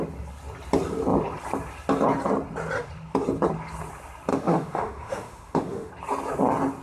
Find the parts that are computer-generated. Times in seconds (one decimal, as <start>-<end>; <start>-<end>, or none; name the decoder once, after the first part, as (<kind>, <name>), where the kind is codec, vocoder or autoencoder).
4.3-5.9 (autoencoder, DAC-VAE)